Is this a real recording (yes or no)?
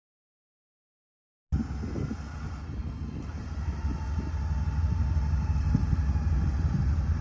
yes